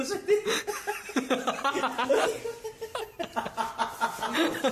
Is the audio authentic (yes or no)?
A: yes